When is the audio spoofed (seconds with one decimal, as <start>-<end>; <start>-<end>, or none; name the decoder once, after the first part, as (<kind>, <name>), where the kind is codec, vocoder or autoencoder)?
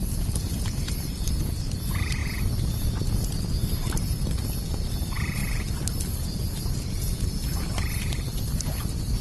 none